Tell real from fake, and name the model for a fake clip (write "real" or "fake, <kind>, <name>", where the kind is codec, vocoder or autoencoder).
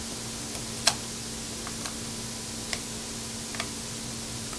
real